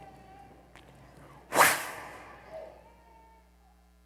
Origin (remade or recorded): recorded